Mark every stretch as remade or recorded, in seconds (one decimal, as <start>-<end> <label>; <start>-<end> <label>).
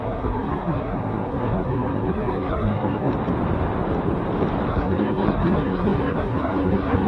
0.0-3.1 remade; 3.1-4.7 recorded; 4.7-7.1 remade